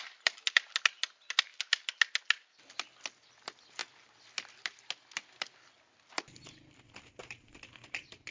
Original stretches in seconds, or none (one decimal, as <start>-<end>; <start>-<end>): 0.0-8.3